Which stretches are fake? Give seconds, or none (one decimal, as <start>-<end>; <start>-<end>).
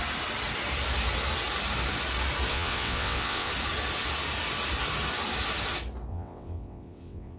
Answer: 2.5-3.5; 6.1-7.4